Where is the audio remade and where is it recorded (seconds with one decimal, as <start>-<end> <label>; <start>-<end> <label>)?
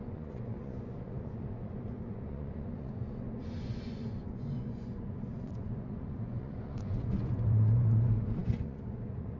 0.0-9.4 remade